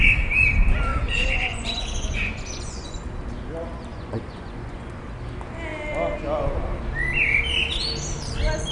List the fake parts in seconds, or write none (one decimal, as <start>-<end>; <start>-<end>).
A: 0.9-3.0; 3.9-5.0